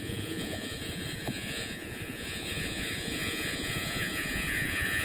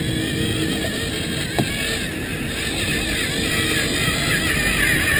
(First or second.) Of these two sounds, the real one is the second